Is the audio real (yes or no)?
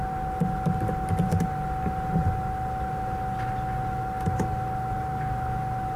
yes